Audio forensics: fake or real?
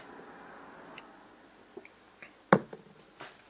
real